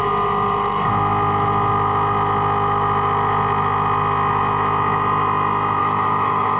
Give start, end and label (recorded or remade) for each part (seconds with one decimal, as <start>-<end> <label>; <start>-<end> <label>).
0.0-5.8 recorded; 5.8-6.6 remade